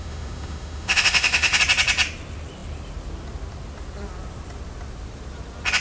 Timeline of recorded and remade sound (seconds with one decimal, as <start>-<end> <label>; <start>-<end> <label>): 0.0-1.6 remade; 1.6-5.8 recorded